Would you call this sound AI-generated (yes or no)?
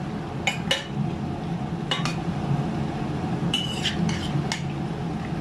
no